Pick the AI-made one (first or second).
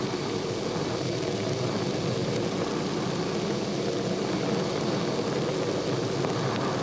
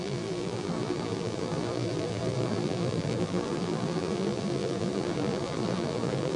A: second